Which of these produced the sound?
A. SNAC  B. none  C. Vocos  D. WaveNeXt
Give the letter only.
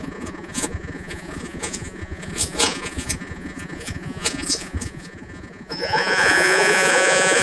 C